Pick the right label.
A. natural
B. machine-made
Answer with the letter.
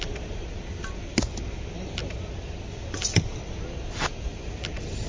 A